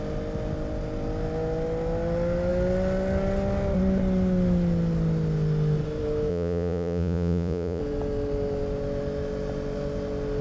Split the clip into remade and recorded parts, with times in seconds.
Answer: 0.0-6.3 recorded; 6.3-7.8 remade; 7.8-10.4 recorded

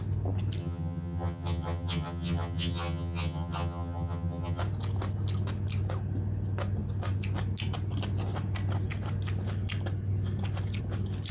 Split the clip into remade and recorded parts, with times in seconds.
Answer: 0.0-0.6 recorded; 0.6-4.6 remade; 4.6-11.3 recorded

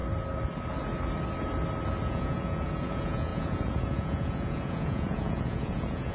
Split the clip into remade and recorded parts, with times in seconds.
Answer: 0.0-2.0 recorded; 2.0-6.1 remade

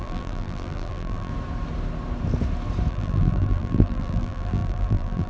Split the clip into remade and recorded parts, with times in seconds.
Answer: 0.0-1.3 remade; 1.3-2.9 recorded; 2.9-5.3 remade

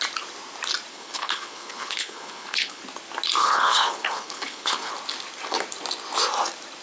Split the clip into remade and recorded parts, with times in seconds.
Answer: 0.0-0.9 recorded; 0.9-2.8 remade; 2.8-3.4 recorded; 3.4-4.9 remade; 4.9-6.8 recorded

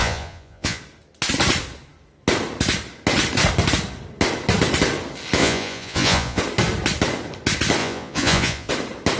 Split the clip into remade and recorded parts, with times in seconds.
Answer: 0.0-0.8 remade; 0.8-5.4 recorded; 5.4-6.4 remade; 6.4-7.8 recorded; 7.8-8.7 remade; 8.7-9.2 recorded

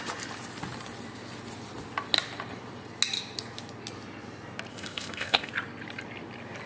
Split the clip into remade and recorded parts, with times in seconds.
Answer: 0.0-4.7 recorded; 4.7-5.5 remade; 5.5-6.7 recorded

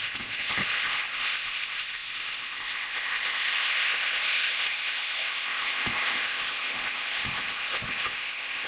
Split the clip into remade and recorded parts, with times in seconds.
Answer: 0.0-8.7 remade